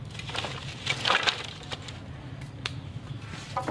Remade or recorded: recorded